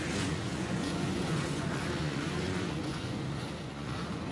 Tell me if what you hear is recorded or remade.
remade